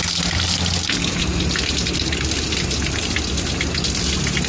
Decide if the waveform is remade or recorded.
recorded